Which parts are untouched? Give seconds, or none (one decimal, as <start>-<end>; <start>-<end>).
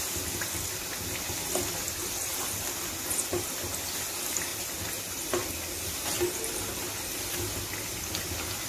0.0-8.7